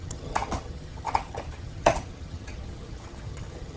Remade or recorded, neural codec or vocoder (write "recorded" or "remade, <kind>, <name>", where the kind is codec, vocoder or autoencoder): remade, vocoder, HiFi-GAN